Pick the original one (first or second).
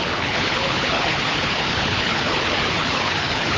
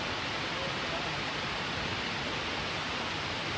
second